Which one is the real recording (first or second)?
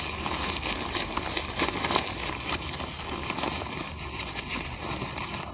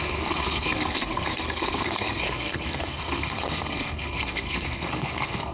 first